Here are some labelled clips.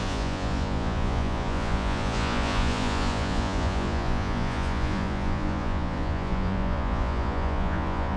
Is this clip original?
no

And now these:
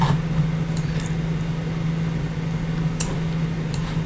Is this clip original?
yes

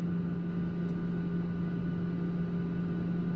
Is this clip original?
yes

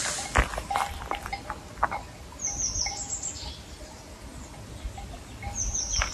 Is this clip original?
yes